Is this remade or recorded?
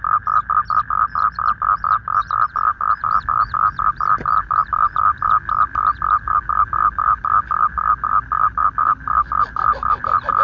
recorded